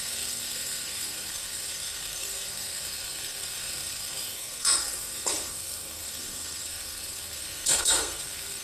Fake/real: fake